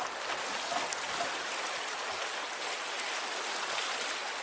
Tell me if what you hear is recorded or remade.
recorded